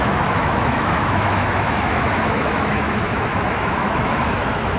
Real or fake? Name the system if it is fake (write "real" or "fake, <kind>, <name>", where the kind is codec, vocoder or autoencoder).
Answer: fake, autoencoder, DAC-VAE